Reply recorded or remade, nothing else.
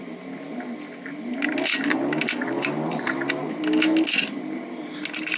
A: recorded